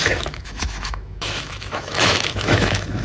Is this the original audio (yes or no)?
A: no